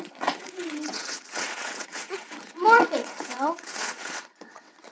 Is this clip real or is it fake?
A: fake